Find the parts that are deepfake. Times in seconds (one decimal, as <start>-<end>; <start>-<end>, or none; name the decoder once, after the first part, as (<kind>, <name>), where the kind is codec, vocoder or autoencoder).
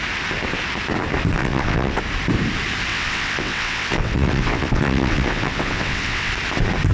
1.4-2.0 (vocoder, WaveNeXt); 2.9-6.3